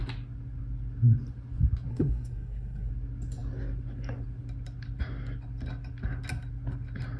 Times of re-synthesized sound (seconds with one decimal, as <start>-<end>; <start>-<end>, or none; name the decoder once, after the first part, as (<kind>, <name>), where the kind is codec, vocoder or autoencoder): 1.9-2.9 (codec, SNAC)